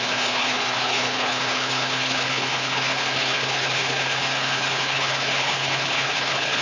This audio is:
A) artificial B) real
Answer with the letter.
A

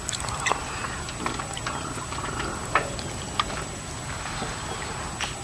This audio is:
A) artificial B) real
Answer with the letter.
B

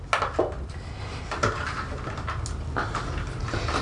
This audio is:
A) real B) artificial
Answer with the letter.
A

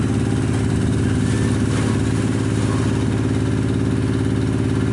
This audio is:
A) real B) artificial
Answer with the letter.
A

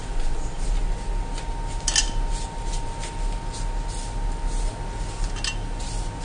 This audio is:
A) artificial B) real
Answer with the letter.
B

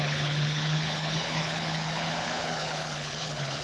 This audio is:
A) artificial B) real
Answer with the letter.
A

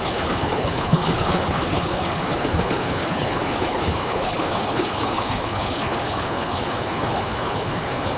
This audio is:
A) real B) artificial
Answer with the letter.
B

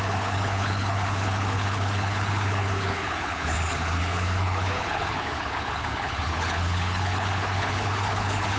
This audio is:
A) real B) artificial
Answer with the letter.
B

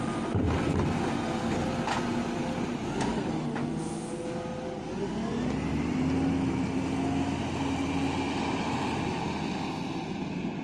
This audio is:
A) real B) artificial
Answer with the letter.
A